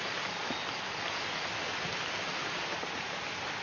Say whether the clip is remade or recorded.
recorded